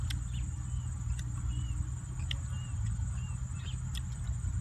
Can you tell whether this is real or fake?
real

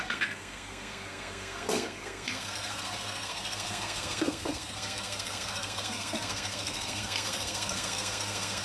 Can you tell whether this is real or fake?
fake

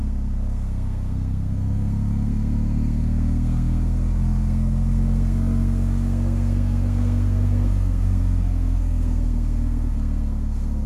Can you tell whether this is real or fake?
fake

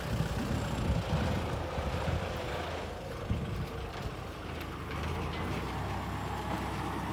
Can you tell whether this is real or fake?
real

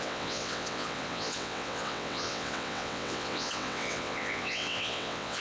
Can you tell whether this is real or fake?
fake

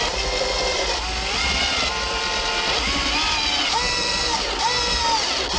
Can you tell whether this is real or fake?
real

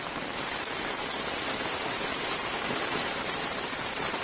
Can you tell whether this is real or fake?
fake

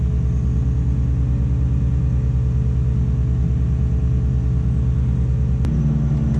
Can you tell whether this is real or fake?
real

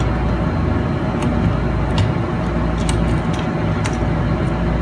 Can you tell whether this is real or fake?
real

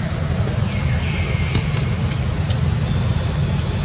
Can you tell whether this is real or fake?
real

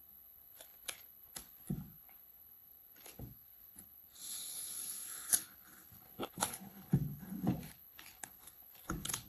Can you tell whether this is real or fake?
fake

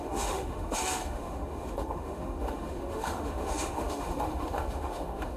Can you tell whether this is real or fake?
fake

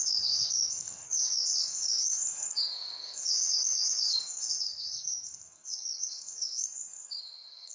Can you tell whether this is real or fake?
fake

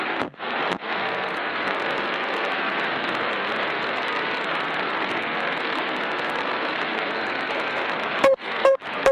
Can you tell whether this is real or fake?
fake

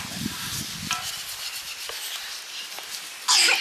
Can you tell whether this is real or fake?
real